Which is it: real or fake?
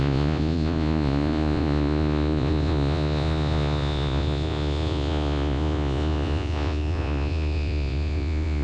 fake